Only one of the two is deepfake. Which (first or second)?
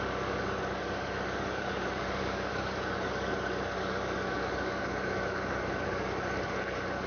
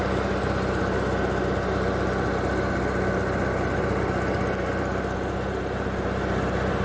first